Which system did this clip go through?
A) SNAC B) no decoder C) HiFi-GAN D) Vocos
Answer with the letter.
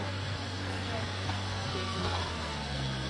A